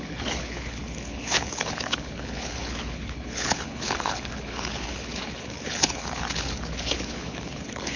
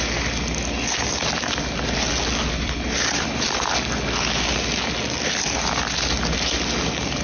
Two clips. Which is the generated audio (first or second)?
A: first